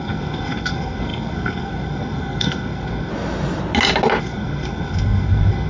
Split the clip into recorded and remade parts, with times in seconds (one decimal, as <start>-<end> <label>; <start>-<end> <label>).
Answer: 0.0-3.1 remade; 3.1-4.2 recorded; 4.2-5.7 remade